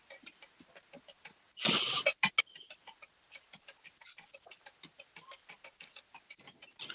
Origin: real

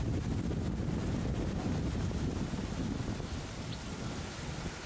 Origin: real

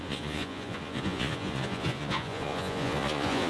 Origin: fake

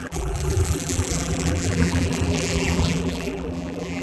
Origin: fake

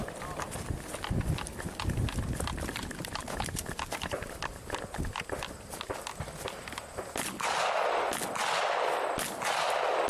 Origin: real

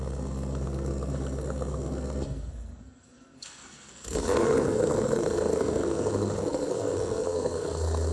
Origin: fake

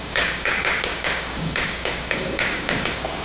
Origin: fake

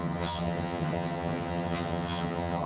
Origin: fake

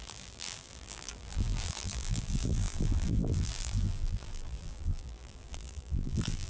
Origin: fake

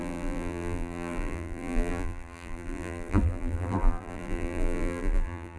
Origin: fake